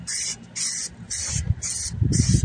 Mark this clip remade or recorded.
recorded